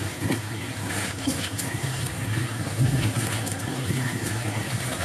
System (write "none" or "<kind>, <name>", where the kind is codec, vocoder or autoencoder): codec, SNAC